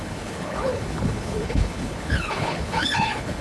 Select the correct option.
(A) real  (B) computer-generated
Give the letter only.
B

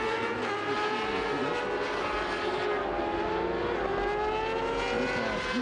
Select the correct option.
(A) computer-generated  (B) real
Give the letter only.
B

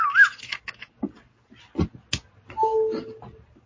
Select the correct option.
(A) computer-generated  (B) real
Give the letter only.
B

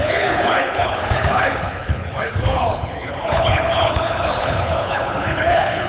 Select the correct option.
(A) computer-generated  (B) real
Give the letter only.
A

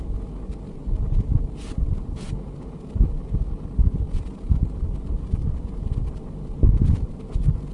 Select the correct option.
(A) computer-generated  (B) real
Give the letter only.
B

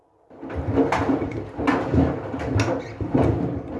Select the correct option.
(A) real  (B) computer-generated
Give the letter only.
A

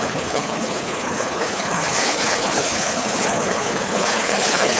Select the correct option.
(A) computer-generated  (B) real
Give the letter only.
A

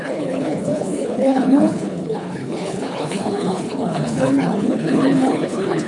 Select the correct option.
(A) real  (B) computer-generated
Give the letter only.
B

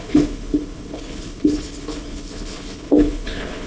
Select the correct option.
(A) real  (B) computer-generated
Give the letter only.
B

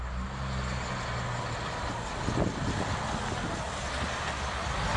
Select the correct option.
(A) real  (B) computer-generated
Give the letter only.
A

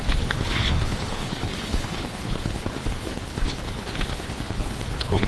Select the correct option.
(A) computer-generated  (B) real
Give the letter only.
A